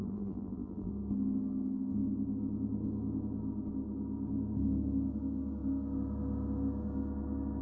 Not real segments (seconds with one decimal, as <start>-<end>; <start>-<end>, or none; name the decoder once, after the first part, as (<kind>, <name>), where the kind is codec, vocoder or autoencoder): 0.0-0.9 (vocoder, BigVGAN v2)